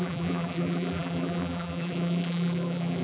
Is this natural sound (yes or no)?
no